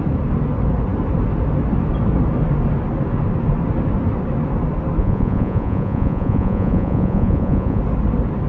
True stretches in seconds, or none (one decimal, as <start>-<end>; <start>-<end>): 0.0-5.0; 7.8-8.5